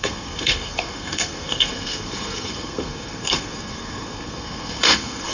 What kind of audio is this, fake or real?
fake